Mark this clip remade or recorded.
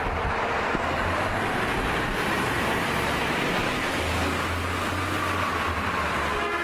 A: recorded